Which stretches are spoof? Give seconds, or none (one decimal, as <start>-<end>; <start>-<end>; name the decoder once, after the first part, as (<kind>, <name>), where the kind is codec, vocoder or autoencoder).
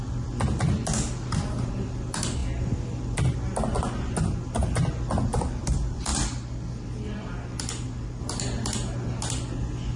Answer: none